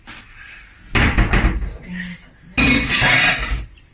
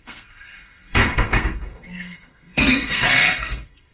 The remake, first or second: second